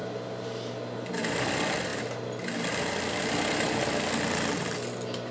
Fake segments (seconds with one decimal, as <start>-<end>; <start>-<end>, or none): 0.0-1.4; 1.9-5.3